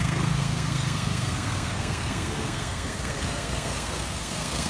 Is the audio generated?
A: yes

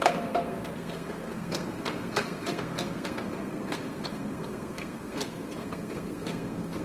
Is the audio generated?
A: yes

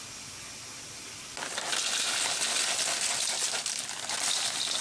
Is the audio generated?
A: no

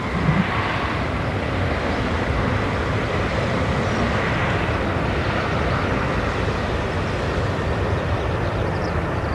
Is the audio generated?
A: no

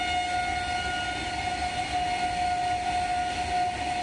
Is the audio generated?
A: no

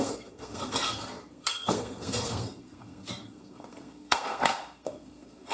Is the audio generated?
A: yes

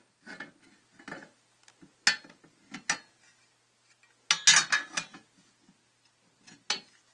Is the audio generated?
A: no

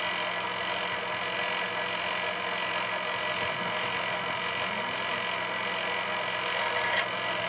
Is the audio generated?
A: no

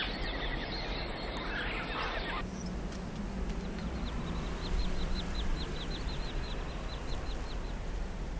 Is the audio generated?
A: no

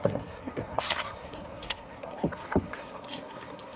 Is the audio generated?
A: yes